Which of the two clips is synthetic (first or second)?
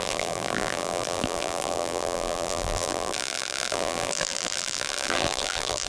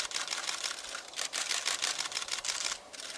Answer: first